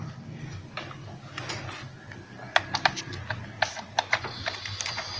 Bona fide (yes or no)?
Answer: yes